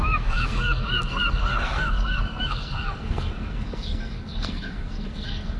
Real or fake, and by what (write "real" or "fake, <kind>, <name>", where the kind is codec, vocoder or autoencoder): fake, codec, SNAC